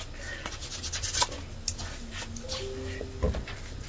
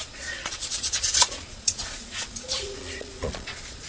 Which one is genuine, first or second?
first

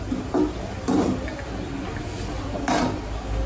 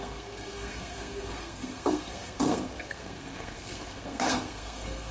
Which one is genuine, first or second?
first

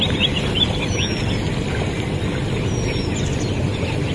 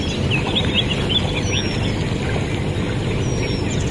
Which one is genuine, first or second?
second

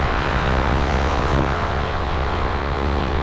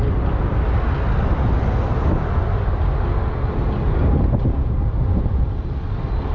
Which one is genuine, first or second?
second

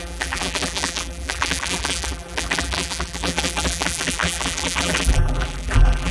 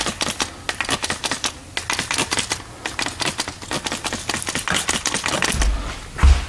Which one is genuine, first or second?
second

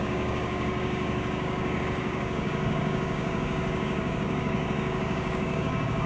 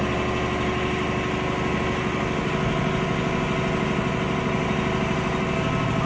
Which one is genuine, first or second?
second